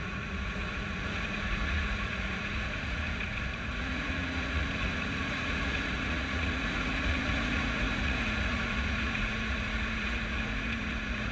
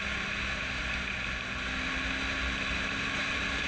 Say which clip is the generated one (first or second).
first